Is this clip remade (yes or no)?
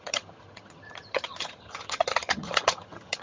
yes